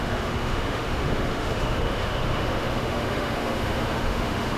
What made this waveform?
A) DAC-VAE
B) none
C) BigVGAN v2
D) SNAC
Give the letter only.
A